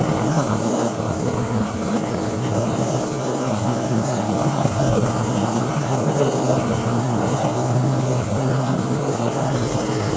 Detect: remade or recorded remade